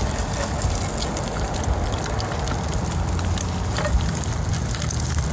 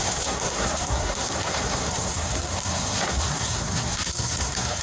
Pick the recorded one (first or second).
first